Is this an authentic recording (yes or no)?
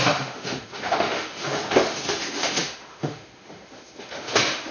no